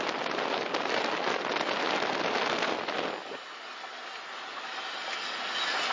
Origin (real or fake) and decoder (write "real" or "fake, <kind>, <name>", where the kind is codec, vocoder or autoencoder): real